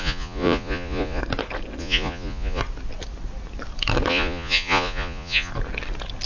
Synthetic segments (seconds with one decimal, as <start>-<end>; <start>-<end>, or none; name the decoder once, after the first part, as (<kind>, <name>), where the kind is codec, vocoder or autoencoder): 0.0-1.2 (vocoder, Vocos); 1.8-2.6; 4.1-5.5